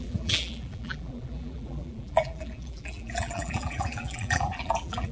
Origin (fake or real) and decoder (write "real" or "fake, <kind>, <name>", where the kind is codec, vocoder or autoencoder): fake, vocoder, BigVGAN v2